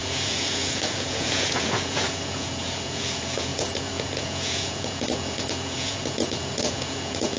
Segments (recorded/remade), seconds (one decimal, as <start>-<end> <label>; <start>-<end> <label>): 0.0-7.4 remade